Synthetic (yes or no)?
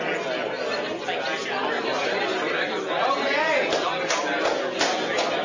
no